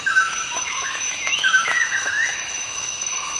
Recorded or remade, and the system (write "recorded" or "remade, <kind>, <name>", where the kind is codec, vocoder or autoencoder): remade, autoencoder, DAC-VAE